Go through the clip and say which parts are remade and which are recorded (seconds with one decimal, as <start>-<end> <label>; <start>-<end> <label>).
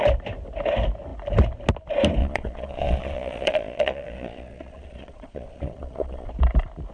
0.0-2.2 recorded; 2.2-6.3 remade; 6.3-6.9 recorded